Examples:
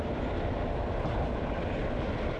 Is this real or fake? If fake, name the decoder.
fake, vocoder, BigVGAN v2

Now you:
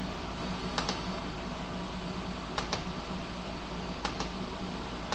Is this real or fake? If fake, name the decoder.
real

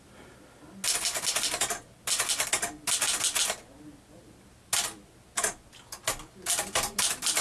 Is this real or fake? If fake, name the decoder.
real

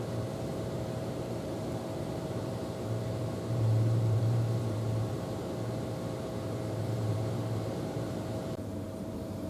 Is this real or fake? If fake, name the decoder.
fake, vocoder, BigVGAN v2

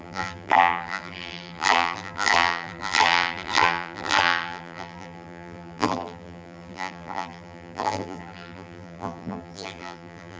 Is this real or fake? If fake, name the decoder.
fake, vocoder, BigVGAN v2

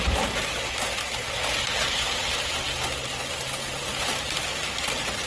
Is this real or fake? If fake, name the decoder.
real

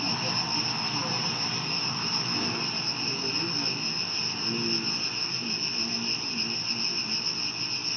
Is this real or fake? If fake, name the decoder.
real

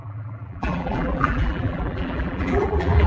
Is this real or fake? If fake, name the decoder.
fake, vocoder, BigVGAN v2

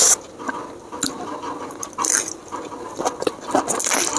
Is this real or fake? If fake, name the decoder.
real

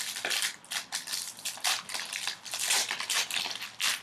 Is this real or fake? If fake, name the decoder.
real